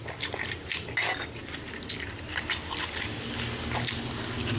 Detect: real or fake real